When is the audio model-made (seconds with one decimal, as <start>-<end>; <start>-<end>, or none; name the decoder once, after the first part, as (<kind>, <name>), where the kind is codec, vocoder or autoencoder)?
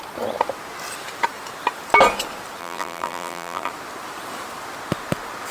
2.6-3.7 (vocoder, BigVGAN v2)